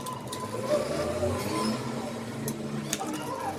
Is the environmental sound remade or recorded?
recorded